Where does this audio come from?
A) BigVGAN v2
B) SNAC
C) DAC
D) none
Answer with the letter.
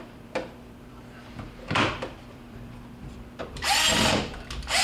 A